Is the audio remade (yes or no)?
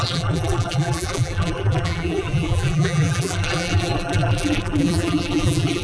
yes